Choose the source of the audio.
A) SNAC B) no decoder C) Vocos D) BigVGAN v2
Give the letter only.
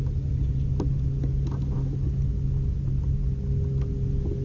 B